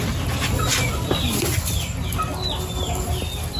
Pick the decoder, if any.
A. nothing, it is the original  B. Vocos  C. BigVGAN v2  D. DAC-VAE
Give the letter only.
A